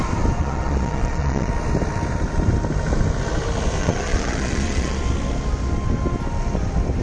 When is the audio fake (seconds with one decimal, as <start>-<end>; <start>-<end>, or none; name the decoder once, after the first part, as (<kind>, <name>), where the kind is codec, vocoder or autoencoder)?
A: 0.4-1.5 (vocoder, Vocos); 3.8-5.0